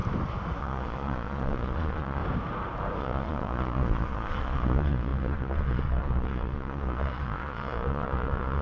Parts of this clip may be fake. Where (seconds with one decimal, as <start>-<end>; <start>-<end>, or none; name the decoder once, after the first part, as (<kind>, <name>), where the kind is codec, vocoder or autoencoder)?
0.6-2.2 (vocoder, Vocos); 3.0-8.6